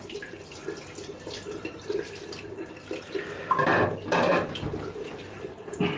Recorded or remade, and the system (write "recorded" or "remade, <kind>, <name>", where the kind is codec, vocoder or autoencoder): recorded